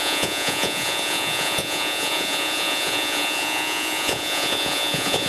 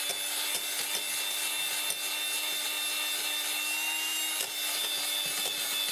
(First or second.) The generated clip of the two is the first